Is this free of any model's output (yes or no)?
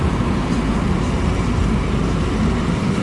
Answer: yes